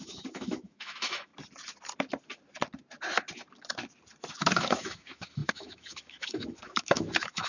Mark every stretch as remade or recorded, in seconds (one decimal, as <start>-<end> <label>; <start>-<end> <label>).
0.0-1.3 remade; 1.3-4.3 recorded; 4.3-7.5 remade